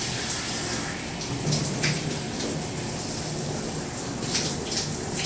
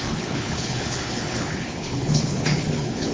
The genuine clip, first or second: first